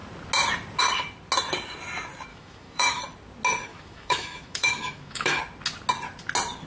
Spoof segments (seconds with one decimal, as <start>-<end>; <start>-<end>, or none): 2.3-3.0; 3.7-5.4